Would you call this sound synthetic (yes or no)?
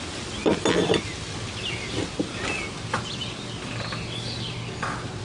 no